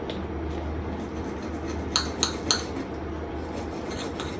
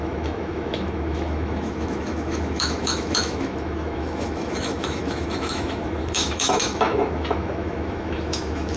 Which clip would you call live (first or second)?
first